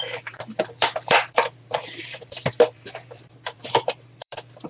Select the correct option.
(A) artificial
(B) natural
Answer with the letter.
A